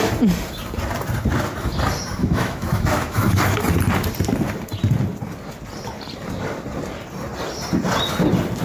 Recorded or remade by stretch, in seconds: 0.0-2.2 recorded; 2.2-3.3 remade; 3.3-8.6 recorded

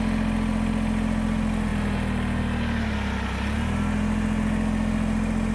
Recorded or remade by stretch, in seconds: 0.0-5.5 recorded

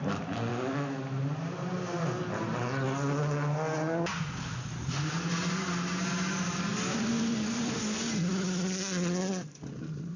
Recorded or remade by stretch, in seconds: 0.0-0.5 recorded; 0.5-1.0 remade; 1.0-10.2 recorded

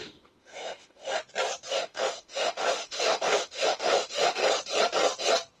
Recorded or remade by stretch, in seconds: 0.0-1.2 remade; 1.2-1.7 recorded; 1.7-4.4 remade; 4.4-5.6 recorded

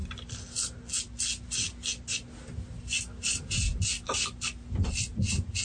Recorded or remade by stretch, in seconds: 0.0-5.6 recorded

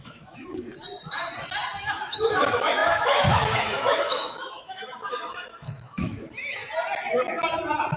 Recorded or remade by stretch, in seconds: 0.0-0.7 remade; 0.7-1.8 recorded; 1.8-6.6 remade; 6.6-8.0 recorded